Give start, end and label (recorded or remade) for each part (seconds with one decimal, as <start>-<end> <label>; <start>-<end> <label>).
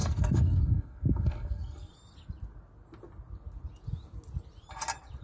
0.0-1.9 remade; 1.9-5.2 recorded